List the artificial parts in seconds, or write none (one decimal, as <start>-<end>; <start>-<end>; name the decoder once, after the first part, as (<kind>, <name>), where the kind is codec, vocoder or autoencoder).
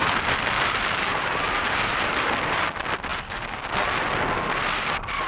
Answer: none